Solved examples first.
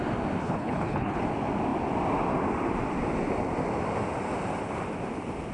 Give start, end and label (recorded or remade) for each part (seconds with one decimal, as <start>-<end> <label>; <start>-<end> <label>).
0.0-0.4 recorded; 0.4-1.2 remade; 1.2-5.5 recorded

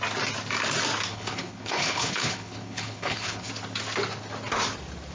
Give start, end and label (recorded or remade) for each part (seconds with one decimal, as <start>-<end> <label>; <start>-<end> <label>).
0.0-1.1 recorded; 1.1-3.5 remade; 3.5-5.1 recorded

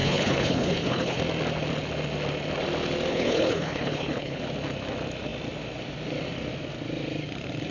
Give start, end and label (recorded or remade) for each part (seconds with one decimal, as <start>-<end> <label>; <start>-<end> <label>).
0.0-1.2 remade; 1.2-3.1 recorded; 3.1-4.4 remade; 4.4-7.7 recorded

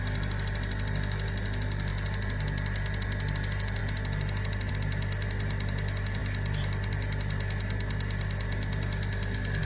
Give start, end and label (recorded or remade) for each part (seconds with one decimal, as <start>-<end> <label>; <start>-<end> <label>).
0.0-9.6 recorded

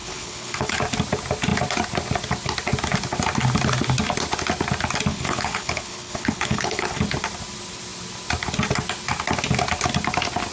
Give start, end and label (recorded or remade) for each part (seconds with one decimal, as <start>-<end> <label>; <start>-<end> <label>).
0.0-0.8 remade; 0.8-5.1 recorded; 5.1-7.0 remade; 7.0-10.5 recorded

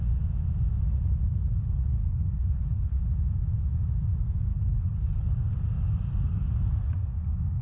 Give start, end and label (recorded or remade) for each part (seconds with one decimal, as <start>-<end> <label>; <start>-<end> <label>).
0.0-1.6 recorded; 1.6-3.0 remade; 3.0-4.5 recorded; 4.5-5.3 remade; 5.3-7.6 recorded

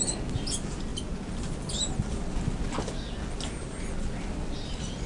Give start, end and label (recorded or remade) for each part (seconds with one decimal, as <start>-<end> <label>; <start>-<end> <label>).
0.0-5.1 recorded

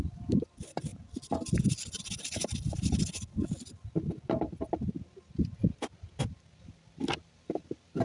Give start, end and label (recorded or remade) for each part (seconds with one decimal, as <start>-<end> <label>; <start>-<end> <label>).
0.0-8.0 recorded